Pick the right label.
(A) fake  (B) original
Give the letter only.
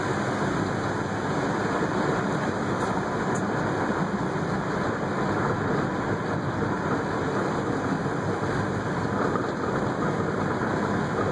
B